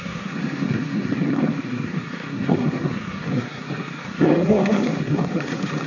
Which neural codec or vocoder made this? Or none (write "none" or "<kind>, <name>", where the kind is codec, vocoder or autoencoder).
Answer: codec, SNAC